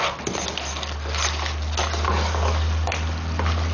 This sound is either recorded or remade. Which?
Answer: recorded